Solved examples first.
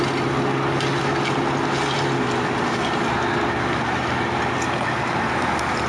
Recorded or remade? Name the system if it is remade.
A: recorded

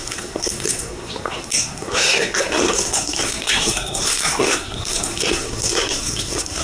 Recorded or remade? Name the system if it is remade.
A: remade, codec, SNAC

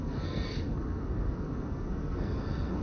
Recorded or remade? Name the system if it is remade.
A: remade, codec, SNAC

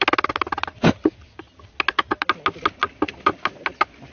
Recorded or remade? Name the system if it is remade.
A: recorded